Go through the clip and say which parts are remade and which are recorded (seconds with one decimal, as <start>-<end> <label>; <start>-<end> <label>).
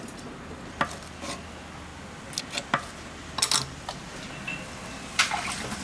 0.0-5.8 recorded